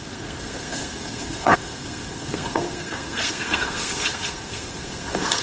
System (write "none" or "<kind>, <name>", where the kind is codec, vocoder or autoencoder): codec, SNAC